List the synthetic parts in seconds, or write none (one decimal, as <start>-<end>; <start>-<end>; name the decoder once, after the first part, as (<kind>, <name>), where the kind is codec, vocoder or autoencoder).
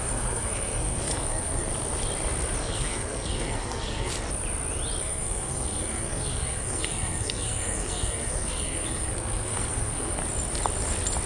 0.0-1.7 (codec, SNAC); 2.6-4.1; 5.0-10.2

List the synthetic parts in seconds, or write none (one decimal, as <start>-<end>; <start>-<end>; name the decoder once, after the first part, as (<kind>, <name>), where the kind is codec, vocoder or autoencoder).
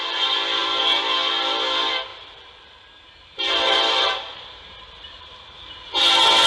2.1-6.0 (vocoder, BigVGAN v2)